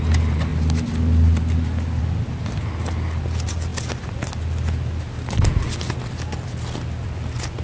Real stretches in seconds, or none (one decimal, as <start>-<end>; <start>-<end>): 0.0-7.6

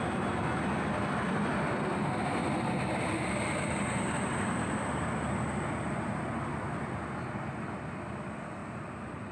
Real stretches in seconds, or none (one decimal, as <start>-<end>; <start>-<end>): 0.0-2.4; 3.7-8.6

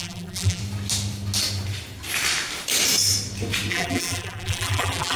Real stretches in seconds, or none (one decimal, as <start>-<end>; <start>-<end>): 0.6-3.7

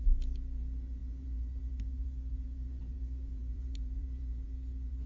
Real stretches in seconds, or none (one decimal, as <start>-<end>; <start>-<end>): none

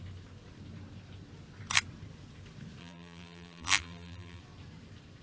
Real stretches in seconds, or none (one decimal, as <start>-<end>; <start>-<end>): 0.0-2.8; 4.4-5.2

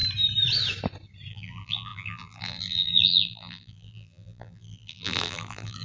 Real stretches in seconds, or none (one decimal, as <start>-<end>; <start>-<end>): 0.0-1.3